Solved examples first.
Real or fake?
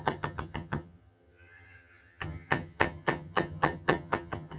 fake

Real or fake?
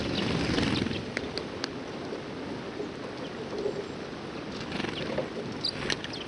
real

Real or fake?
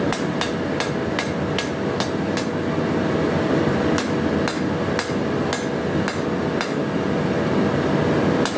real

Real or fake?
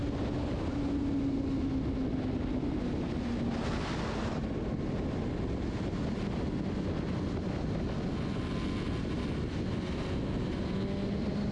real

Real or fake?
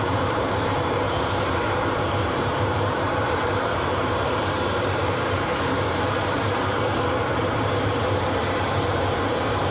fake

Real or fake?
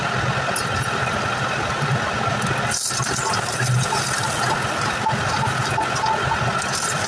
real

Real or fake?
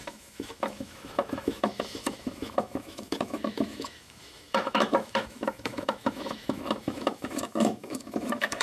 fake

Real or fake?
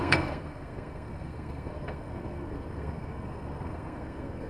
fake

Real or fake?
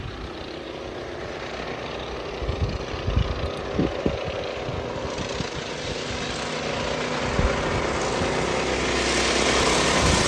real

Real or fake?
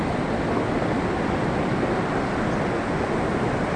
real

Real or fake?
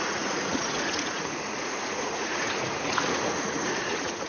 fake